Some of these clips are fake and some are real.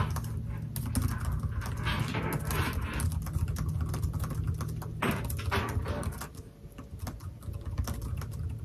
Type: real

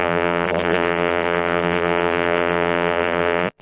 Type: fake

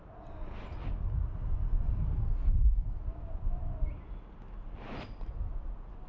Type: real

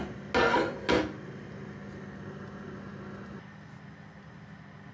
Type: real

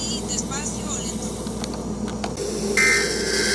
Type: real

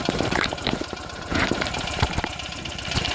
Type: fake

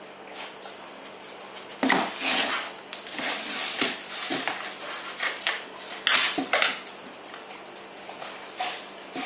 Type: real